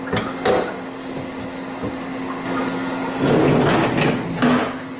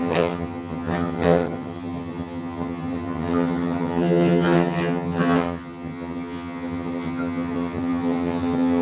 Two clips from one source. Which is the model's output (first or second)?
second